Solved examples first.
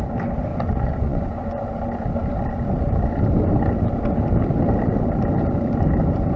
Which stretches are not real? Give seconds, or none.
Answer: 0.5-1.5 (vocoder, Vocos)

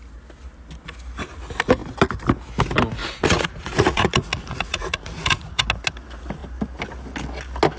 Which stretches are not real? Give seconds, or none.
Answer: 3.0-5.6 (vocoder, Vocos)

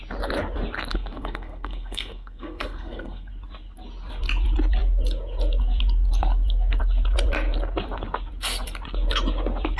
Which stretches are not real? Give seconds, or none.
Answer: 0.9-3.3 (codec, SNAC)